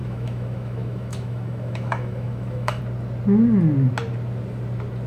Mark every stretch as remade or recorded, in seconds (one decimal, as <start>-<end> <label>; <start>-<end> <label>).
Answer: 0.0-2.8 remade; 2.8-5.1 recorded